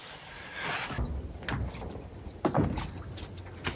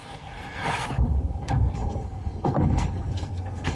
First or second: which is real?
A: first